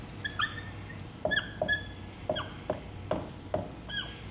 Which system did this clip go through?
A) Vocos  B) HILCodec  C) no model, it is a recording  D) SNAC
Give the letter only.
C